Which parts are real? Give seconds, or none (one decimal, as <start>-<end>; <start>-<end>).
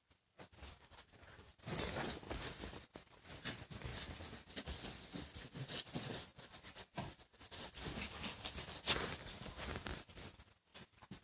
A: 0.0-0.7; 1.5-11.2